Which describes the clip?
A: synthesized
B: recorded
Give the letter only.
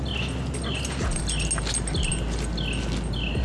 B